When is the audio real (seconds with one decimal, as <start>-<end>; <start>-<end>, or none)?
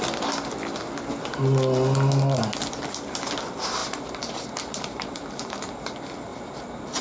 0.0-0.8; 1.4-3.8; 5.6-6.3